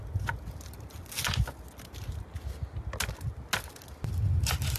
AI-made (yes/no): no